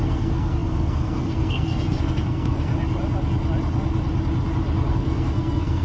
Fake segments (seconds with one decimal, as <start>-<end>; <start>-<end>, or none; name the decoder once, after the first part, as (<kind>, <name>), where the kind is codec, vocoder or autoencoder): 0.0-2.7 (codec, SNAC); 4.9-5.8